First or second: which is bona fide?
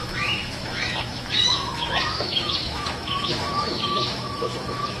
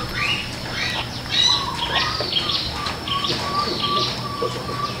second